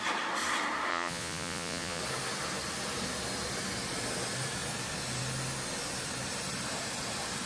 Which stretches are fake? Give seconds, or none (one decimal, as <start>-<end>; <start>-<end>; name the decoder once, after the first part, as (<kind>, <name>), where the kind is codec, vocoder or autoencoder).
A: 0.9-2.0 (vocoder, Vocos)